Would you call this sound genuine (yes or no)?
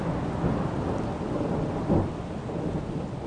yes